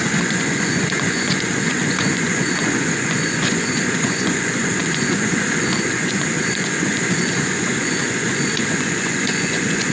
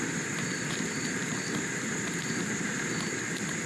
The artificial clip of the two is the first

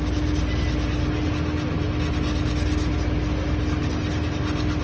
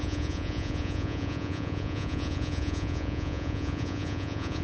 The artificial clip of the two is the second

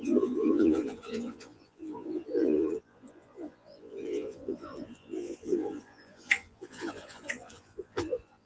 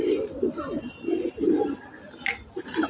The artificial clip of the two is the first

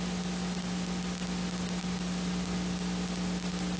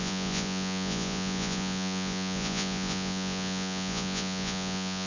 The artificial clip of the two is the second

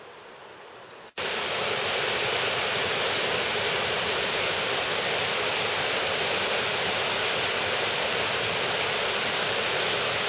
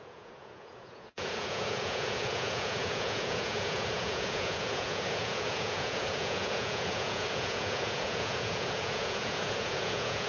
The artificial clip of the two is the second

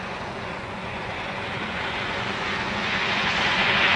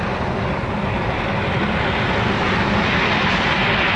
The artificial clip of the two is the first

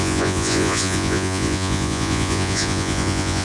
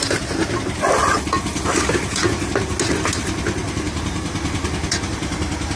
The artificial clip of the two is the first